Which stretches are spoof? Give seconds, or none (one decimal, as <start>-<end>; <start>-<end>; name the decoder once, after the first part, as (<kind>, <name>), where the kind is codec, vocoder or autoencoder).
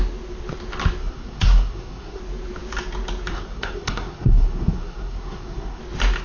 1.0-2.2 (codec, SNAC); 3.3-5.8